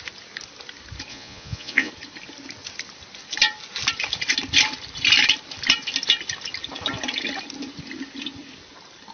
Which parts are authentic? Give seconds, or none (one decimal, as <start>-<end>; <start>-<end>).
0.0-1.1; 1.9-9.1